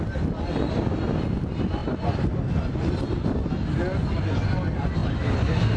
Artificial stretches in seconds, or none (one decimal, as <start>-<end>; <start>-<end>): 1.8-3.5